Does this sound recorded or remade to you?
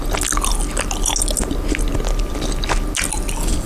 recorded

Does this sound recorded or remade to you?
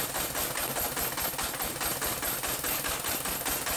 recorded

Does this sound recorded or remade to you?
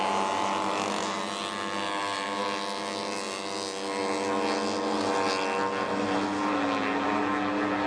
recorded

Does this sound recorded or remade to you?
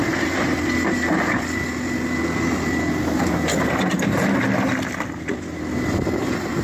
recorded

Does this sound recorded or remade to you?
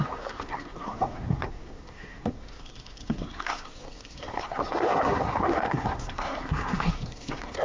remade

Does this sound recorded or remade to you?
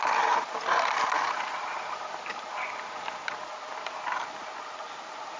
recorded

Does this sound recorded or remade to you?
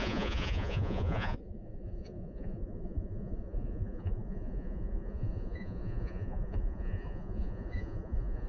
remade